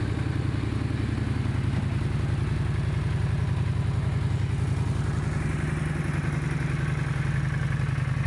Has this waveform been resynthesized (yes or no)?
no